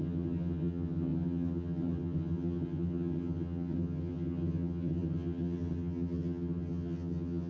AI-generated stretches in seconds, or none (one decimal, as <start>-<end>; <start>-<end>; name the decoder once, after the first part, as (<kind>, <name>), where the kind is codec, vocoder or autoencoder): 0.0-7.5 (vocoder, HiFi-GAN)